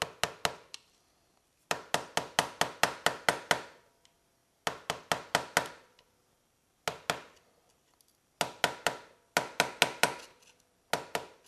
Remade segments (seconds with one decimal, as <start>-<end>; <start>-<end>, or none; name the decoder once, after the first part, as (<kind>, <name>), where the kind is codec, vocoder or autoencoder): none